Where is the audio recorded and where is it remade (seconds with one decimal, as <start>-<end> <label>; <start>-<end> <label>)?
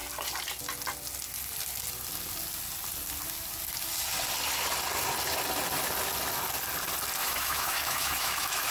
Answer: 0.0-7.2 recorded; 7.2-8.7 remade